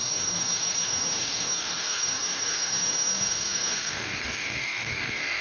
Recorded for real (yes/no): no